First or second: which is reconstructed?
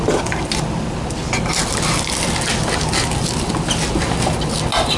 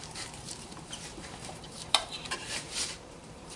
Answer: second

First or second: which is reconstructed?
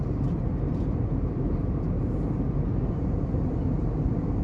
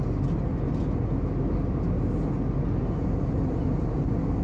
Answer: first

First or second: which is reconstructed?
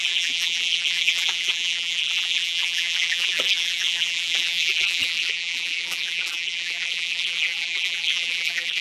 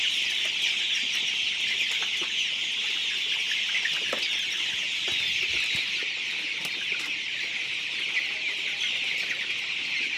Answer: first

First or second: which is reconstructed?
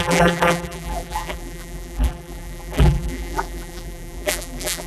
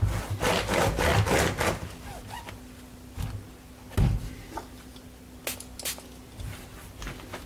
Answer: first